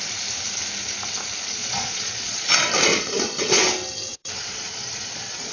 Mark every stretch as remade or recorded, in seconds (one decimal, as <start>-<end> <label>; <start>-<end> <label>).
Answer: 0.0-1.6 recorded; 1.6-2.5 remade; 2.5-2.9 recorded; 2.9-3.6 remade; 3.6-4.1 recorded; 4.1-5.5 remade

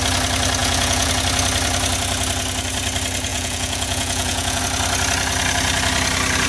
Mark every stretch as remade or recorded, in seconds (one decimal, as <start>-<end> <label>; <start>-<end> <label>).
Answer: 0.0-0.6 recorded; 0.6-1.1 remade; 1.1-3.3 recorded; 3.3-4.6 remade; 4.6-6.5 recorded

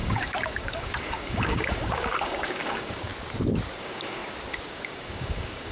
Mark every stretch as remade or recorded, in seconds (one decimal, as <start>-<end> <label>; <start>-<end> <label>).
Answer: 0.0-3.1 remade; 3.1-3.8 recorded; 3.8-4.2 remade; 4.2-4.7 recorded; 4.7-5.7 remade

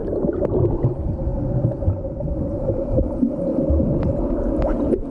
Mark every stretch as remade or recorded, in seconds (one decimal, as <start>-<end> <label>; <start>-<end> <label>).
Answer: 0.0-0.5 recorded; 0.5-1.3 remade; 1.3-1.8 recorded; 1.8-3.5 remade; 3.5-5.1 recorded